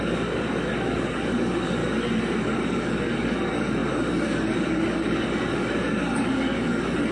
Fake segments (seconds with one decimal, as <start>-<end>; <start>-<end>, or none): 0.0-1.8; 2.4-7.1